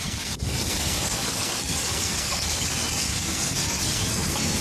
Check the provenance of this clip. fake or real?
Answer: fake